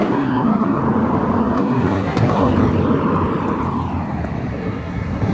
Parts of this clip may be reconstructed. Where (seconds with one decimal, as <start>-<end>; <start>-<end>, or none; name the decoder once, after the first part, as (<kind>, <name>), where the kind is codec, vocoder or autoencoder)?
0.0-0.8 (codec, SNAC); 1.4-2.5; 4.5-5.3